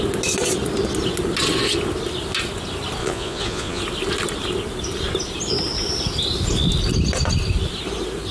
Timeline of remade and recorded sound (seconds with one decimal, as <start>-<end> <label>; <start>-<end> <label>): 0.0-3.0 recorded; 3.0-3.8 remade; 3.8-8.3 recorded